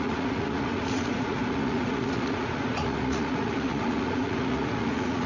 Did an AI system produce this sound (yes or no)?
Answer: yes